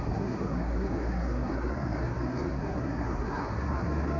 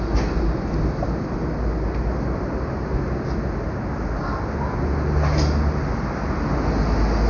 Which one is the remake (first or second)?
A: first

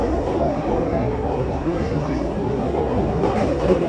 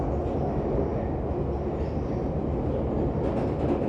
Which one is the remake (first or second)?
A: first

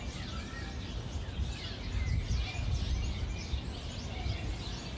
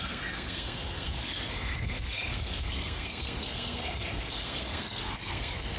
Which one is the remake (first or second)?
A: second